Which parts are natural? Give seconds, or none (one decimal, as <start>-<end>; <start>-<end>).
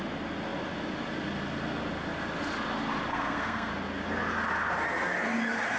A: 0.0-3.1; 3.7-5.8